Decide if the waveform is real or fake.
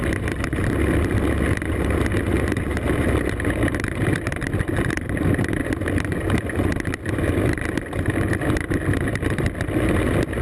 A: fake